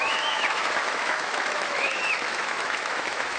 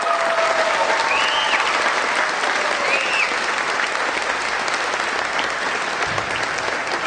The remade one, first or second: first